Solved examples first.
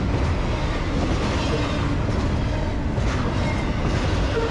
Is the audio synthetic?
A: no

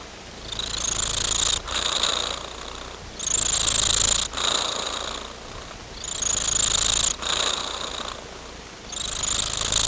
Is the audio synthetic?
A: no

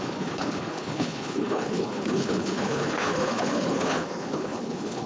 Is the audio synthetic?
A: yes